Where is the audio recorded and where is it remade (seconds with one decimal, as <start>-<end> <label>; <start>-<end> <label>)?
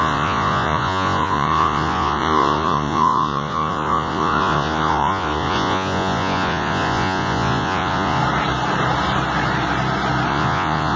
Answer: 0.0-8.2 remade; 8.2-10.3 recorded; 10.3-11.0 remade